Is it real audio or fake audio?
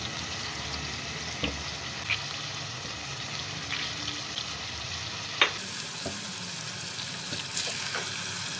real